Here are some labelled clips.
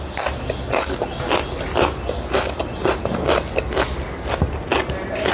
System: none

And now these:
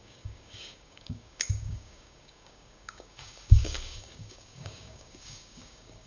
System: codec, DAC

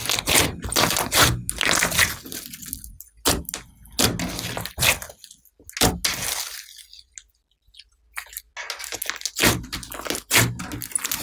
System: none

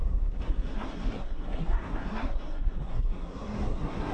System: codec, SNAC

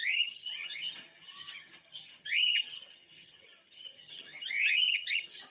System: vocoder, HiFi-GAN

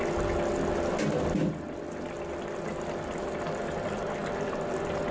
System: none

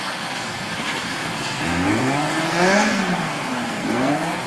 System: codec, SNAC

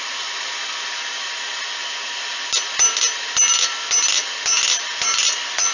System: none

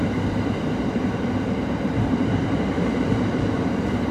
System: vocoder, BigVGAN v2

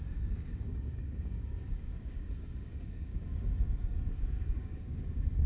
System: codec, DAC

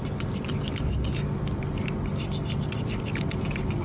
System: none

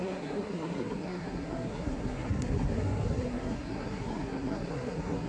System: codec, SNAC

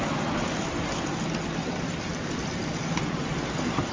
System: none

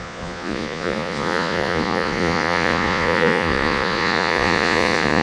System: vocoder, Vocos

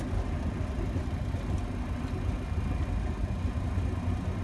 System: none